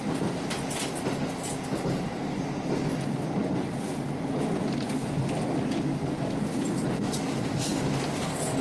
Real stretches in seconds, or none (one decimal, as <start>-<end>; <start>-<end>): 0.0-8.6